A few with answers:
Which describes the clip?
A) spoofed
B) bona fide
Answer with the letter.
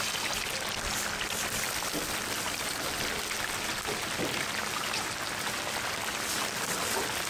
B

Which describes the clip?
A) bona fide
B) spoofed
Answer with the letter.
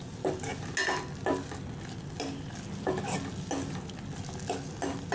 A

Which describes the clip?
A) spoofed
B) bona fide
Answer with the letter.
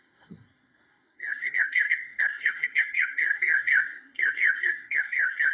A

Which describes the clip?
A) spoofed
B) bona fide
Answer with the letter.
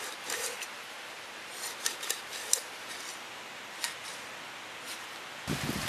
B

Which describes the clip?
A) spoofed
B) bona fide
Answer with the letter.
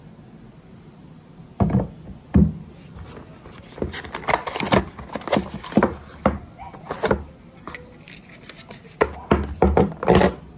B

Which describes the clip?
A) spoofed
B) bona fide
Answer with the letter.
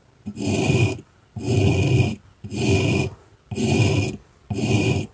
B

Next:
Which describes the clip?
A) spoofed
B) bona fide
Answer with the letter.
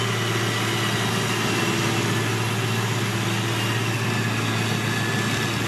B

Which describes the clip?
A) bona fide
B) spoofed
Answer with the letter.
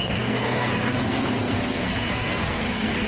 B